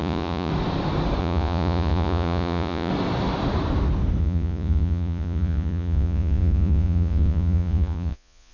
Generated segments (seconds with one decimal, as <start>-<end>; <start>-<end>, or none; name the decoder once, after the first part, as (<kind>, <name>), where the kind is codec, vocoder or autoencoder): 0.0-0.5 (vocoder, Vocos); 1.2-2.9; 4.2-8.5